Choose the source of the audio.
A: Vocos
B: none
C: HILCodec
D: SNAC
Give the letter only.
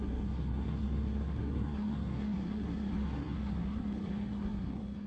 D